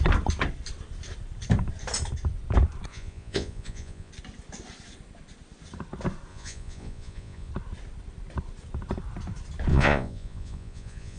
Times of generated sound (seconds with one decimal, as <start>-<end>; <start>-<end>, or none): 2.9-4.1; 6.3-7.5; 9.7-11.2